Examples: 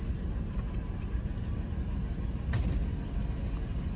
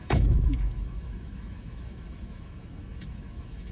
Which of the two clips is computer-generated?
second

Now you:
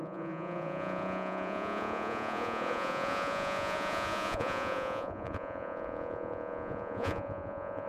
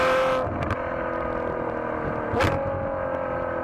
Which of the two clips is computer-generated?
first